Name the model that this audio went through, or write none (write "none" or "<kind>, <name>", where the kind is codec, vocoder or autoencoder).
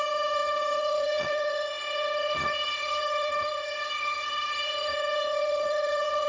vocoder, HiFi-GAN